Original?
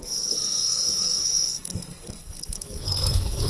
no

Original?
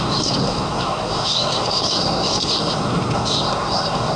no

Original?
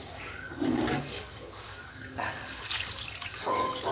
no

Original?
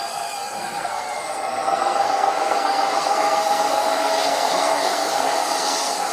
no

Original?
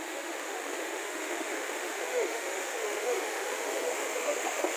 no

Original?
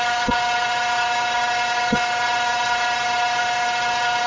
no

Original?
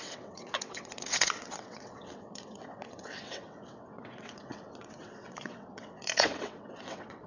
no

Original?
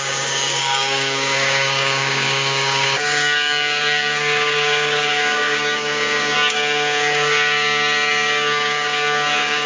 no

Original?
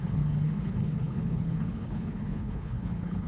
no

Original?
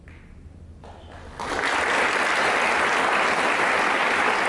yes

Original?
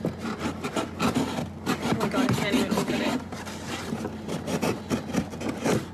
yes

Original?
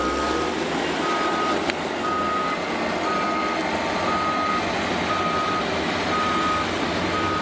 yes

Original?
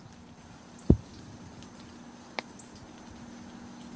yes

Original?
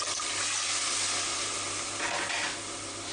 yes